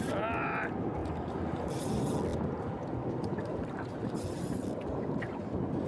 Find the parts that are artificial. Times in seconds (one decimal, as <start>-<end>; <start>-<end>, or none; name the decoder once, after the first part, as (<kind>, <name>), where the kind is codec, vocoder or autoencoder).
1.0-1.8 (vocoder, BigVGAN v2); 3.5-5.2